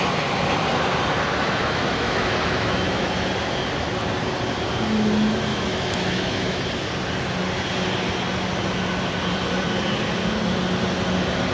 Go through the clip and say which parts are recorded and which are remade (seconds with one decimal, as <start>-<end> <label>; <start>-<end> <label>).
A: 0.0-1.6 recorded; 1.6-3.3 remade; 3.3-5.5 recorded; 5.5-6.6 remade; 6.6-11.5 recorded